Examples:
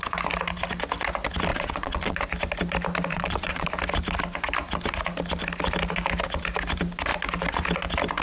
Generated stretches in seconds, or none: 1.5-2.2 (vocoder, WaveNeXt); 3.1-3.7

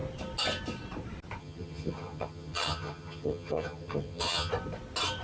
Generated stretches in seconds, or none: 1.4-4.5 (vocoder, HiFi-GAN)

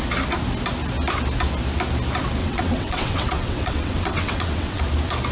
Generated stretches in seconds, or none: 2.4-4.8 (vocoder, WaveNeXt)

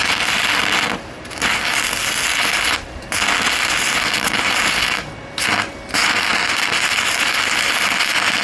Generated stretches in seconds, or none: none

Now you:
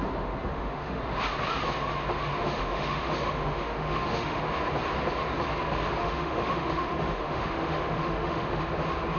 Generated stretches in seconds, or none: 0.5-1.0 (autoencoder, DAC-VAE); 2.3-4.4; 6.0-8.6

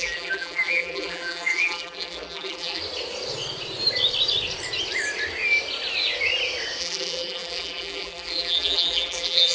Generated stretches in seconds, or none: 0.0-2.8 (vocoder, BigVGAN v2); 6.8-9.5

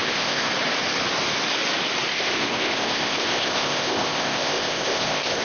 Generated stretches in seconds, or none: 0.0-0.5 (codec, ZipCodec); 2.1-5.4